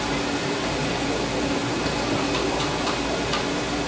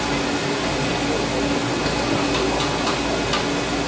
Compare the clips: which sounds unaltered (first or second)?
second